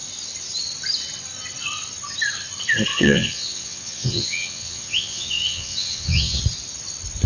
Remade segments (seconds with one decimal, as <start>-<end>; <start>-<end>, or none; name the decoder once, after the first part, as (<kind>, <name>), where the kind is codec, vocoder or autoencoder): 2.9-6.4 (vocoder, WaveNeXt)